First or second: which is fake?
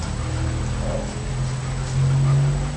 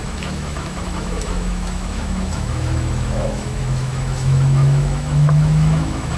second